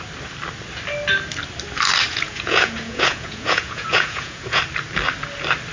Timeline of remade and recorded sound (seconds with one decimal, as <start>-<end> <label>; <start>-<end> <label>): 0.0-2.1 recorded; 2.1-4.6 remade; 4.6-5.7 recorded